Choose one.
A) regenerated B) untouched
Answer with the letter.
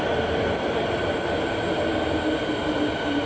B